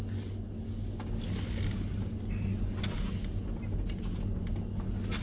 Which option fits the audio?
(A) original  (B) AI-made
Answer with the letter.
A